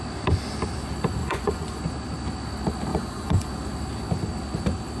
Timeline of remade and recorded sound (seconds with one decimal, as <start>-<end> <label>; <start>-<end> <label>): 0.0-1.2 recorded; 1.2-1.8 remade; 1.8-2.9 recorded; 2.9-3.5 remade; 3.5-5.0 recorded